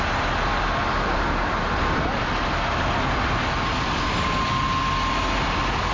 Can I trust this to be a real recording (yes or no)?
yes